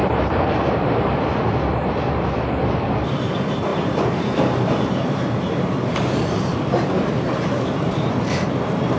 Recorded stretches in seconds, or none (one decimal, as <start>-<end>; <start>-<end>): 1.4-3.7